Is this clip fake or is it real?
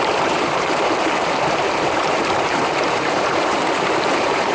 fake